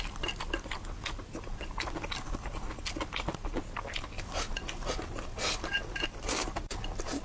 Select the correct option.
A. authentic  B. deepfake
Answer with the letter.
A